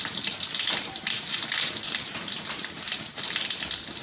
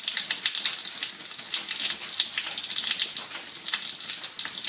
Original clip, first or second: second